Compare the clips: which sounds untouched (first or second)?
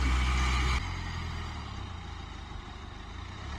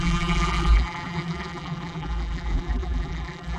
first